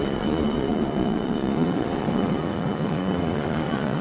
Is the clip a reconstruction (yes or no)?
yes